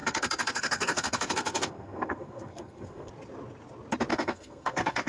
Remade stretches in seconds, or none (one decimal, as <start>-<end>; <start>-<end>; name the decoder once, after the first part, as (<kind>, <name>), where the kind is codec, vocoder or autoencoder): 0.0-3.1 (codec, SNAC); 4.1-5.1